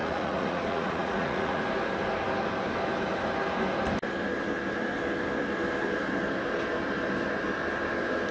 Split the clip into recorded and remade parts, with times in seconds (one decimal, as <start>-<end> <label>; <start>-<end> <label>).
0.0-1.6 remade; 1.6-8.3 recorded